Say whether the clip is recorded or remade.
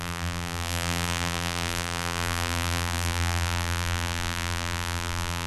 remade